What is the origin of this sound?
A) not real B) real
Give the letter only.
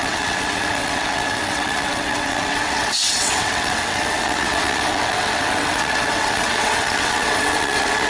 A